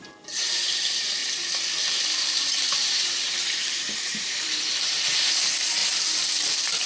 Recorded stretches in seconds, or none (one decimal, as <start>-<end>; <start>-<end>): 5.8-6.9